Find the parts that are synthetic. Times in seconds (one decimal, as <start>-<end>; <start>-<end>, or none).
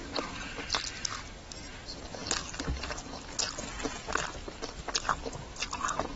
none